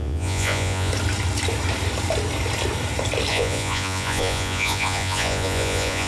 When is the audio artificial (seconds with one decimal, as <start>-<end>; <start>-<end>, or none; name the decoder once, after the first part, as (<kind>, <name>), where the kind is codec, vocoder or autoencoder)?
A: 0.0-0.9 (vocoder, Vocos); 3.3-6.1